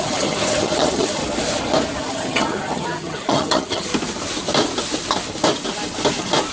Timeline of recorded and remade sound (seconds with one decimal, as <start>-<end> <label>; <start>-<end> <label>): 0.0-1.2 remade; 1.2-2.0 recorded; 2.0-3.9 remade; 3.9-6.5 recorded